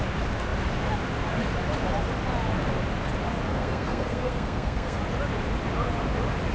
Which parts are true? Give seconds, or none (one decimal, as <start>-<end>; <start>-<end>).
0.0-3.5; 5.0-6.5